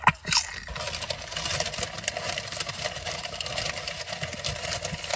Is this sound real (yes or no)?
yes